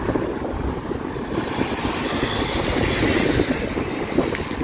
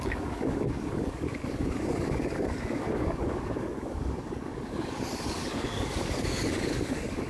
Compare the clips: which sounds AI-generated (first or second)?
second